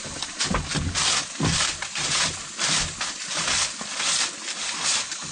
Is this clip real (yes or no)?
yes